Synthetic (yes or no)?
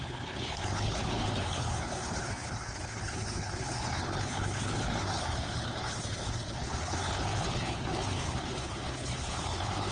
yes